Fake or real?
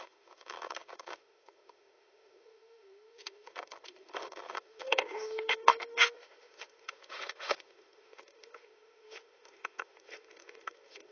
fake